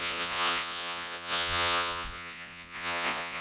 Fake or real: fake